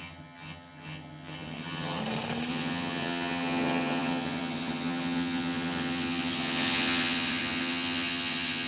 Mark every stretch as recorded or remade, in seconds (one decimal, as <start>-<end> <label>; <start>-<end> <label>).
0.0-2.0 remade; 2.0-2.5 recorded; 2.5-8.7 remade